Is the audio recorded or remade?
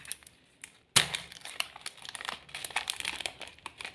recorded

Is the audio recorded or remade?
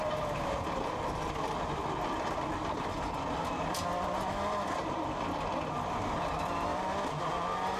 recorded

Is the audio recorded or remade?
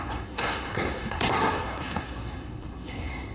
remade